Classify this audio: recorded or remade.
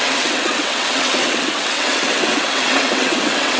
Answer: remade